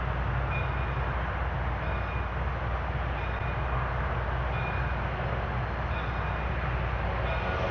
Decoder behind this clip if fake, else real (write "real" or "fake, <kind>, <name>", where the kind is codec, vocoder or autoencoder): real